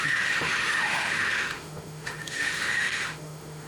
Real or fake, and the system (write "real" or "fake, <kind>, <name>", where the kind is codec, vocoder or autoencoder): fake, autoencoder, DAC-VAE